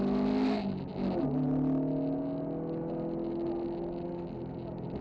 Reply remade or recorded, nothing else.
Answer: recorded